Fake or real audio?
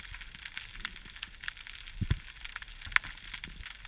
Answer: real